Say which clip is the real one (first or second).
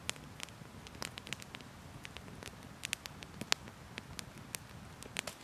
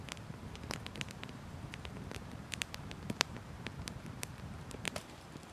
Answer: first